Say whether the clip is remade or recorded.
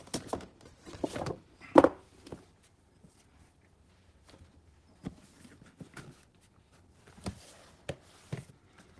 recorded